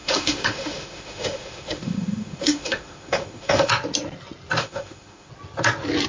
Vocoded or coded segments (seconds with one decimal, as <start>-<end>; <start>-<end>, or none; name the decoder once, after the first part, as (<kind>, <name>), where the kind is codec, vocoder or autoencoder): 0.0-3.7 (autoencoder, DAC-VAE); 4.6-5.3

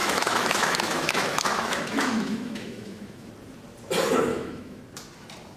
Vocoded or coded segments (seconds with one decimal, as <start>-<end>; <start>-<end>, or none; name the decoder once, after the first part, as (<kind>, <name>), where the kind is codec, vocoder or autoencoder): 0.0-3.3 (autoencoder, DAC-VAE); 4.3-4.8

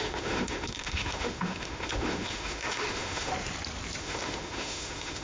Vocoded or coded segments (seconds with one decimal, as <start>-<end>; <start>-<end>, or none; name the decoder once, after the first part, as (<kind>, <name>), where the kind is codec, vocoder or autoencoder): 0.0-3.3 (autoencoder, DAC-VAE); 4.0-5.2

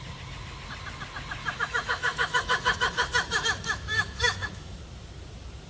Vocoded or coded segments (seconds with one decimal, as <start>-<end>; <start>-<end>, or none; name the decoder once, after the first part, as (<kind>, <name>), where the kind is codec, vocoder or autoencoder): 1.4-4.8 (autoencoder, DAC-VAE)

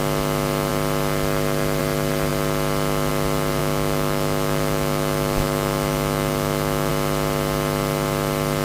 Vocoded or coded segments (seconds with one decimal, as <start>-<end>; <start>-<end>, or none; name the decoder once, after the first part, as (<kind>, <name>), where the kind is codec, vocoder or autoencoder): 3.6-6.9 (autoencoder, DAC-VAE)

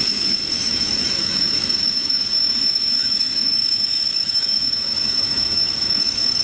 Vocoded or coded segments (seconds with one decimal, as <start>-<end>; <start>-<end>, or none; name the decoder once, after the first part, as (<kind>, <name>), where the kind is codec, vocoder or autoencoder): 0.0-6.4 (autoencoder, DAC-VAE)